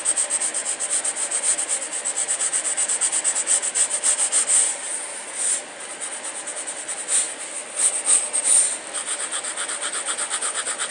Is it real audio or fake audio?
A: real